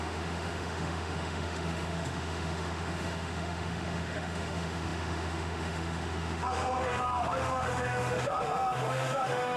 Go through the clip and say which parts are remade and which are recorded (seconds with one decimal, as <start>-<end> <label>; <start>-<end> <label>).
0.0-9.6 remade